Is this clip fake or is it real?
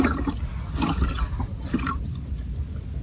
real